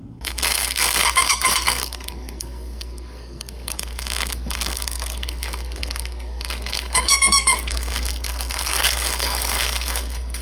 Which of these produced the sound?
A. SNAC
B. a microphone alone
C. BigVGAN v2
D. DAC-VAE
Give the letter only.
A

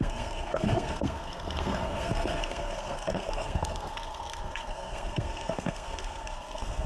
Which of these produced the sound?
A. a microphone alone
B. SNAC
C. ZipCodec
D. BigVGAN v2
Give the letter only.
B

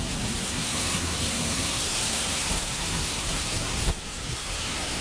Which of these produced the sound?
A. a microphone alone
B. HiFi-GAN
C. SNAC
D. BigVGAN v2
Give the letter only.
C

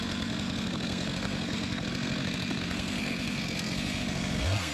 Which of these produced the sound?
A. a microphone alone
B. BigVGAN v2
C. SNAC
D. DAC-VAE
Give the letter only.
C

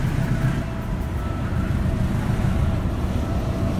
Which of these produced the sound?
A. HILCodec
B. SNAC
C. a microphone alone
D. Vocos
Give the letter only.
C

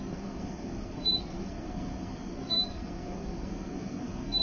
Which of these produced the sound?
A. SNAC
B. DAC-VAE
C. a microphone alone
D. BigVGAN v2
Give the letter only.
A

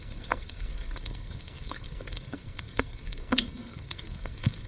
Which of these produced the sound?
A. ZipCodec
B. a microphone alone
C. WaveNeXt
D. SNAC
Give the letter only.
D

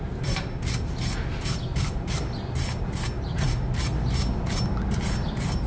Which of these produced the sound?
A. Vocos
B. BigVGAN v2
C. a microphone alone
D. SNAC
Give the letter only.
C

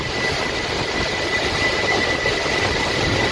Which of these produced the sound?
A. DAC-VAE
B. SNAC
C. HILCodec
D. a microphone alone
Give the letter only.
D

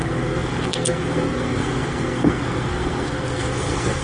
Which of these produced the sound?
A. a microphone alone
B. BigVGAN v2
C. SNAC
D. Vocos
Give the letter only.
C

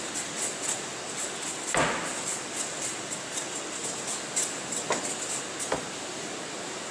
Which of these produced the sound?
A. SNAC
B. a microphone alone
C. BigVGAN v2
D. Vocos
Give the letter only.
B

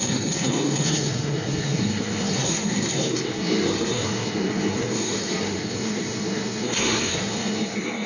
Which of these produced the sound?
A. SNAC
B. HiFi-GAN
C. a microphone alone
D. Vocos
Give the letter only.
A